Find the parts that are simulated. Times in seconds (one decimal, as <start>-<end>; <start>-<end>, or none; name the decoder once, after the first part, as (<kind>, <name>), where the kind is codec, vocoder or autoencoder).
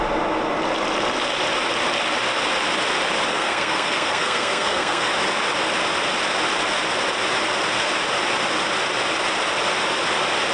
3.3-5.1 (codec, SNAC)